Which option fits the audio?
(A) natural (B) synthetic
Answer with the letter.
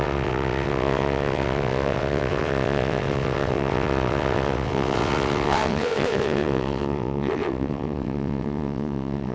B